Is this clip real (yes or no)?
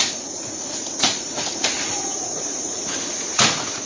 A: no